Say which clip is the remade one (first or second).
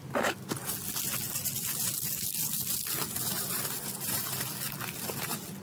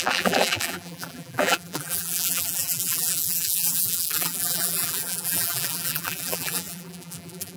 second